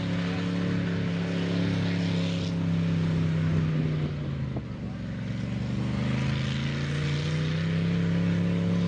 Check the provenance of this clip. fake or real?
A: real